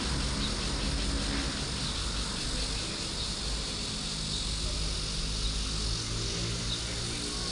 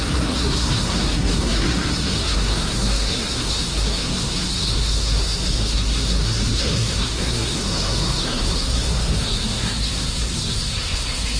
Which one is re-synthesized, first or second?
second